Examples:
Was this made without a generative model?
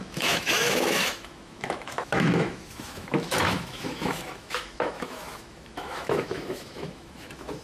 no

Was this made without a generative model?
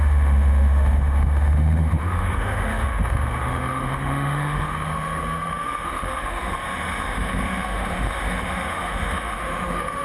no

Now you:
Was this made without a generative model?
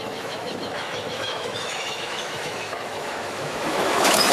no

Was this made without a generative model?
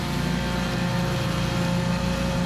yes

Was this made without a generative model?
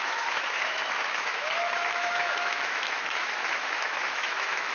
no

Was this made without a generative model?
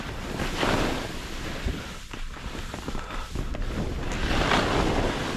yes